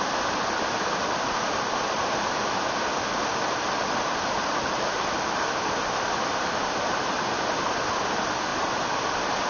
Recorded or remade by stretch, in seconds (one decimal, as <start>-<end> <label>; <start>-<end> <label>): 0.0-8.5 recorded; 8.5-9.5 remade